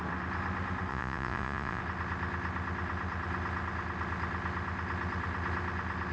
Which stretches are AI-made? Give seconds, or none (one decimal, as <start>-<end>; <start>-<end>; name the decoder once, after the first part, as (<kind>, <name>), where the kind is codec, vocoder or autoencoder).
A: 0.9-1.8 (vocoder, Vocos)